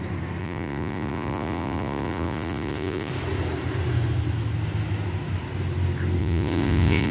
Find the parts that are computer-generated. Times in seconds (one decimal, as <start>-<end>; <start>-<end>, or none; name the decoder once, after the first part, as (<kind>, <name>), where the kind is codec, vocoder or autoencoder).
0.4-3.1 (vocoder, Vocos); 6.2-7.1